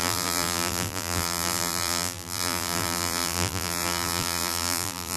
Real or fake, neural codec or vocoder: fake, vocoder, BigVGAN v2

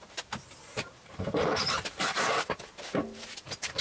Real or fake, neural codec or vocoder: fake, vocoder, BigVGAN v2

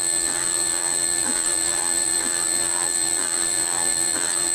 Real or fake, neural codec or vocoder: fake, vocoder, BigVGAN v2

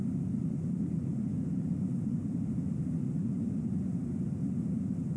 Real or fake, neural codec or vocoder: fake, vocoder, BigVGAN v2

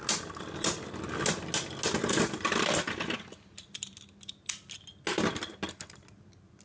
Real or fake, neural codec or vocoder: real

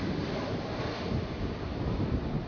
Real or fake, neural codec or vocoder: fake, vocoder, BigVGAN v2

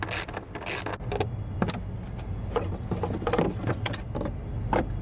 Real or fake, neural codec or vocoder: real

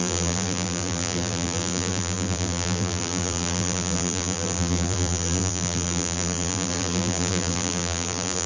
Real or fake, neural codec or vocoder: fake, vocoder, BigVGAN v2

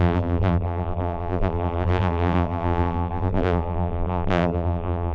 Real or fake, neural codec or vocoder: fake, vocoder, BigVGAN v2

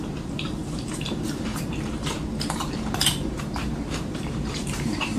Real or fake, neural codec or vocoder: fake, vocoder, BigVGAN v2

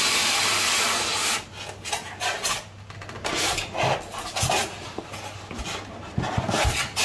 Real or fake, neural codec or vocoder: real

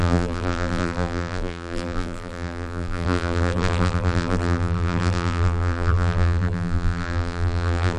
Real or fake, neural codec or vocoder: fake, vocoder, BigVGAN v2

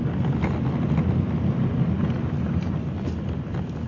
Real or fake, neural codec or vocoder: real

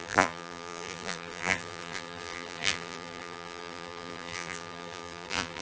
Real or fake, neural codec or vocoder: fake, vocoder, BigVGAN v2